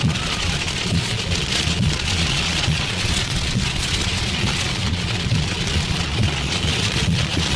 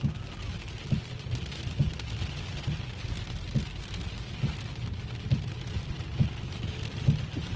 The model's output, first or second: first